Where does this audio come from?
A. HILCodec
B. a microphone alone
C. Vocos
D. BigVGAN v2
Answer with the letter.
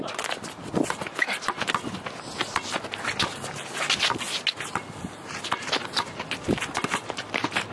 B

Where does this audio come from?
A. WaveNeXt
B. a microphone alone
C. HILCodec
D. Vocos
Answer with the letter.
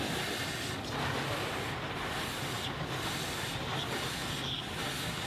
B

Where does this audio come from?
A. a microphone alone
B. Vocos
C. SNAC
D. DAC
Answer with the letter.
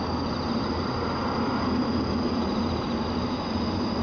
A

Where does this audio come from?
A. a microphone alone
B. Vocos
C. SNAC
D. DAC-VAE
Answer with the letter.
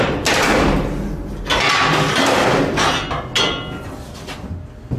A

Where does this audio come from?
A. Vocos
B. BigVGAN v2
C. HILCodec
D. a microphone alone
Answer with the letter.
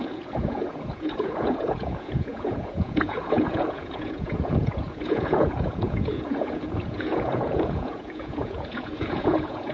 A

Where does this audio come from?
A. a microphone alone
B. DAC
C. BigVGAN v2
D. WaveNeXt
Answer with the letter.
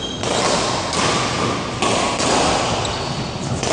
A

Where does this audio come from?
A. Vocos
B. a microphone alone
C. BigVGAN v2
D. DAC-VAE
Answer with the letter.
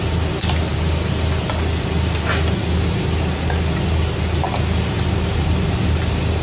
B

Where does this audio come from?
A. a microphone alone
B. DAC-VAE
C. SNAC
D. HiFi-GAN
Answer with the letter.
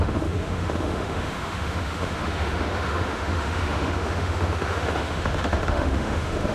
B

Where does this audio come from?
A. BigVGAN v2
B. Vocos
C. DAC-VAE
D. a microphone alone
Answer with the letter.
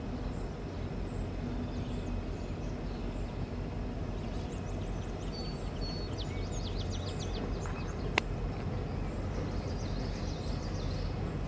D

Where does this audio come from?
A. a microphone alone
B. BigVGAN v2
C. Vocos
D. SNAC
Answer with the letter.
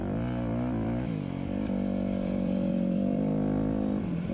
B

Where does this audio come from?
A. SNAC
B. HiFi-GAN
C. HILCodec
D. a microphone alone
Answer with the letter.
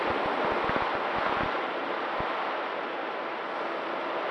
D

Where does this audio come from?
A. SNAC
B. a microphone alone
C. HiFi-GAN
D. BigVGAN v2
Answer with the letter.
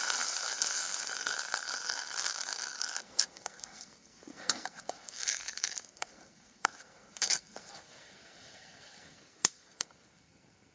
A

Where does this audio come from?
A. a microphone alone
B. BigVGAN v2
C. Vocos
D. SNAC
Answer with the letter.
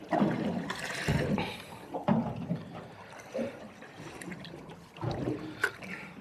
B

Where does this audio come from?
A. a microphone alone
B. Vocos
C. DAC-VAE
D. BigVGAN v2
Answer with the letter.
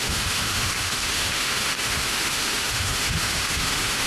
C